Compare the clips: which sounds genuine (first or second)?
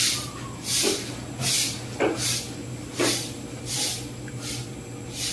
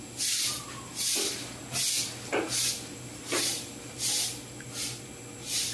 second